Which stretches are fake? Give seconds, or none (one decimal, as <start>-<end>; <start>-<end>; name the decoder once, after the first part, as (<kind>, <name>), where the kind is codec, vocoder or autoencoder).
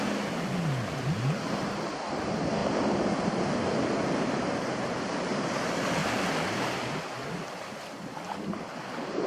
2.6-4.9 (vocoder, BigVGAN v2)